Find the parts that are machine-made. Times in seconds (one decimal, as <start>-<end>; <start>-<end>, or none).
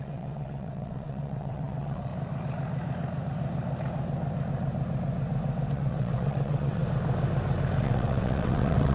0.0-2.1; 5.7-6.8; 7.8-8.9